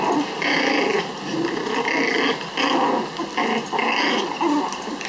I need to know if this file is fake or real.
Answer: real